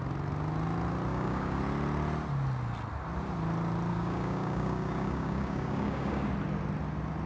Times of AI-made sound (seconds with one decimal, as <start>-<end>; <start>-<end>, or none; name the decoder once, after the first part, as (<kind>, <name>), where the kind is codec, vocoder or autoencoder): 1.1-1.6 (codec, DAC); 3.9-6.3

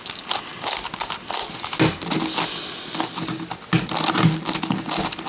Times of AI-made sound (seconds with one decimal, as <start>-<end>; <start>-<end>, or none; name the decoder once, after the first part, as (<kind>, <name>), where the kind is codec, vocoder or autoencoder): none

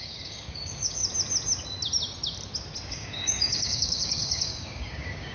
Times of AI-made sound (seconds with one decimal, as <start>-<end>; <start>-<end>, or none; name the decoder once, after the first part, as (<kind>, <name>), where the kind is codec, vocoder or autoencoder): 0.0-1.0 (codec, DAC); 2.9-5.3